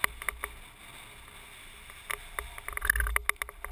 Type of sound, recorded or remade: recorded